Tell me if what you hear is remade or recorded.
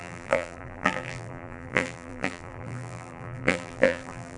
remade